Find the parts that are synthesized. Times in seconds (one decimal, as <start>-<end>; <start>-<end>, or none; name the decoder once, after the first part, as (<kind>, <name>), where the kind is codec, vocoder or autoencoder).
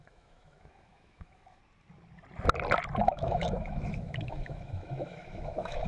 0.0-1.6 (autoencoder, DAC-VAE); 3.0-5.9